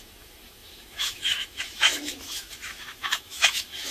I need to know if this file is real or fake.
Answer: fake